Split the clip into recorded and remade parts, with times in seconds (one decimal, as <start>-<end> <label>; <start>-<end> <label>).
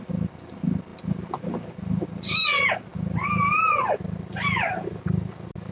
0.0-5.7 recorded